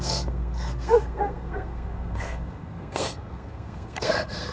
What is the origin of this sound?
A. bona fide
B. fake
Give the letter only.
B